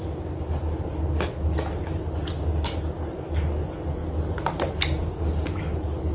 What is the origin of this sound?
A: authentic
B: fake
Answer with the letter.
A